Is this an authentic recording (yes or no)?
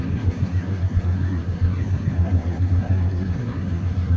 no